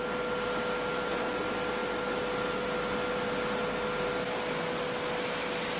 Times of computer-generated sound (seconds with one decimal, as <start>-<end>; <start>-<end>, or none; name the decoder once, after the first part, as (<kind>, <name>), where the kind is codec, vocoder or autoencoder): none